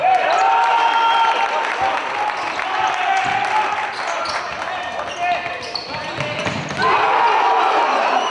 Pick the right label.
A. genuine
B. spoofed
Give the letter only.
A